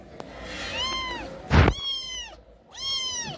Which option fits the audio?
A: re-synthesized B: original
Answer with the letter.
B